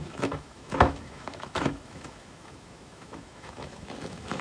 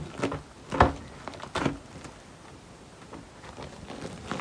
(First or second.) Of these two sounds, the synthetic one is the first